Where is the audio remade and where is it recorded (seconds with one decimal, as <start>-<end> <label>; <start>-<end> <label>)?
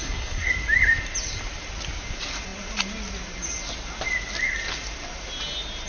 0.0-0.5 remade; 0.5-5.9 recorded